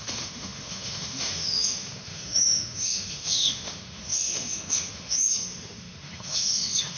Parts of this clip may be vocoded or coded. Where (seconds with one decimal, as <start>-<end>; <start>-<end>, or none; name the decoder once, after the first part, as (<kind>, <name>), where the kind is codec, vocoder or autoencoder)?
0.0-7.0 (autoencoder, DAC-VAE)